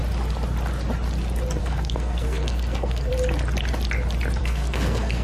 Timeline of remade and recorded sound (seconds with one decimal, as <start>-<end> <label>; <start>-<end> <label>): 0.0-1.6 recorded; 1.6-3.1 remade; 3.1-4.4 recorded; 4.4-5.2 remade